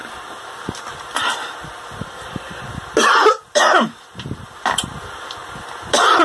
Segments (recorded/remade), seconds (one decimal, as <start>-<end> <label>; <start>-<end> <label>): 0.0-6.2 recorded